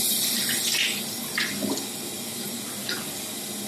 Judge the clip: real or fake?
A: real